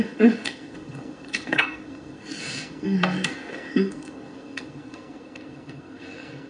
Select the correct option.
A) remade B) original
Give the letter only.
A